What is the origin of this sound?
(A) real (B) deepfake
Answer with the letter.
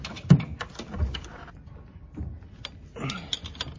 A